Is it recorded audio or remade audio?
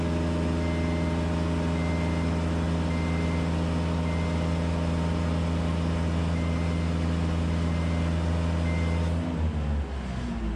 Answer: recorded